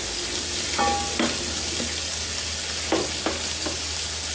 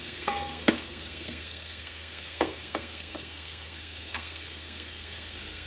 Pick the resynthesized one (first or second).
second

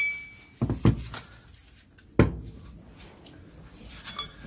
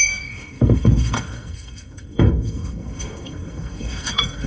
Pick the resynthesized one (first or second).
second